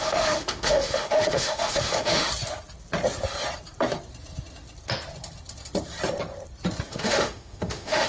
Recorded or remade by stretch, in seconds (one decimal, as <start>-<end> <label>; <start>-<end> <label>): 0.0-2.3 remade; 2.3-6.9 recorded; 6.9-8.1 remade